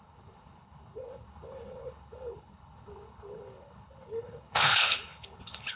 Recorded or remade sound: remade